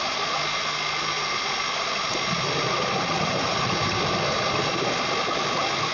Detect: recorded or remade recorded